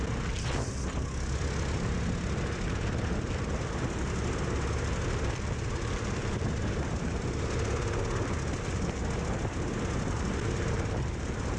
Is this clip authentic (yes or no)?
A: yes